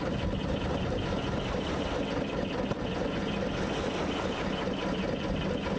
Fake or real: real